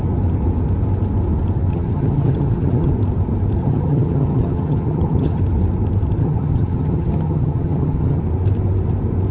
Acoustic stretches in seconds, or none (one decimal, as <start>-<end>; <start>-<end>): 0.0-1.7; 2.9-3.6; 5.4-6.2; 8.2-9.3

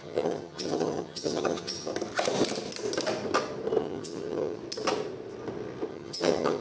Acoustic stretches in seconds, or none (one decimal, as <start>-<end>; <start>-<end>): 1.9-3.8; 4.6-5.9